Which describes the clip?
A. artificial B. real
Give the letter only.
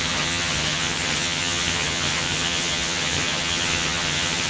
A